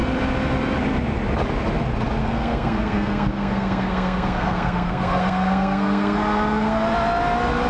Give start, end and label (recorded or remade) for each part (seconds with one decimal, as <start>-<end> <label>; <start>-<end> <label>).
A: 0.0-2.2 recorded; 2.2-6.8 remade; 6.8-7.7 recorded